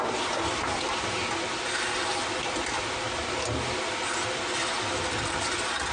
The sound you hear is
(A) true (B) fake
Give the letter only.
A